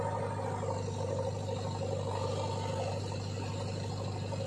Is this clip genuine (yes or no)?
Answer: yes